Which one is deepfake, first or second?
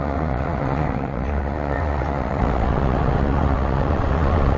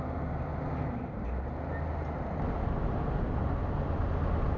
first